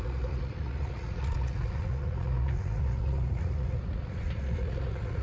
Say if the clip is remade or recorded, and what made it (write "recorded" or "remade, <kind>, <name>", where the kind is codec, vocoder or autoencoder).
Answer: remade, vocoder, Vocos